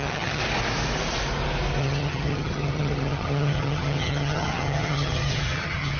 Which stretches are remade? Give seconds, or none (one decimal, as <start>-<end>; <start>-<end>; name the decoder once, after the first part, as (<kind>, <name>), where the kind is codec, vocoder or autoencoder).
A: 0.0-0.4 (vocoder, HiFi-GAN); 1.8-6.0